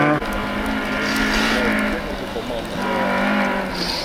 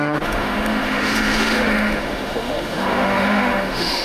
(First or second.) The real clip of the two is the first